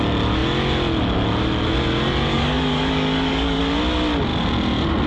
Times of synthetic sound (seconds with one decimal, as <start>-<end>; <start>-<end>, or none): 2.3-3.6